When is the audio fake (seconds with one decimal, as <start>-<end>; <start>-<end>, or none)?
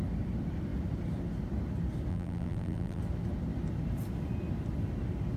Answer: 2.1-3.0